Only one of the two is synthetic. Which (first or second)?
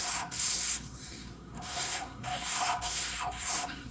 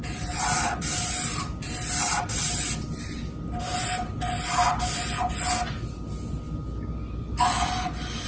first